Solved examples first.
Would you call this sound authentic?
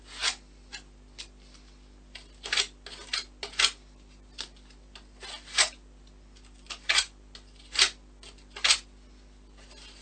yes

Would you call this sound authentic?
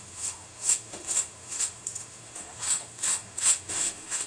no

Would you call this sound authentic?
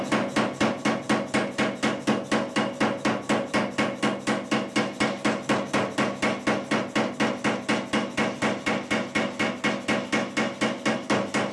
yes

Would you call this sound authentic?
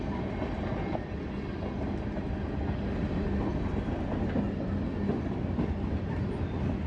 yes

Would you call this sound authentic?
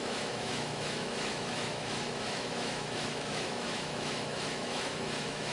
no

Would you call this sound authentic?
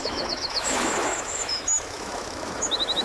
no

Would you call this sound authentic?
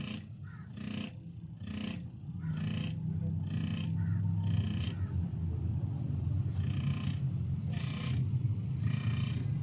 yes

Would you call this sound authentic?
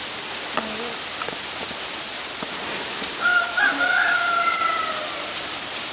yes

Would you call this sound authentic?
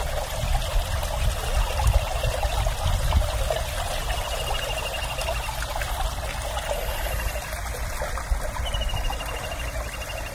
yes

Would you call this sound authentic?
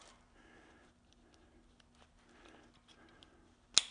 yes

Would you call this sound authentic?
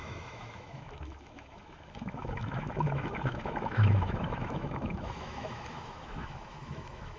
no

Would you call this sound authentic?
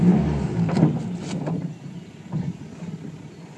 yes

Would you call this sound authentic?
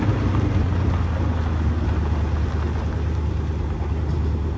yes